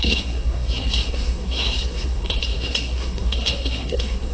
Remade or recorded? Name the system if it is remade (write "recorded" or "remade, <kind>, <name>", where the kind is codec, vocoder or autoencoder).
remade, codec, SNAC